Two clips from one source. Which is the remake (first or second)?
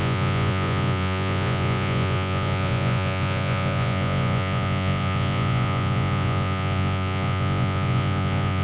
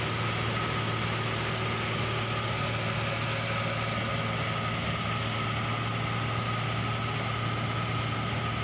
first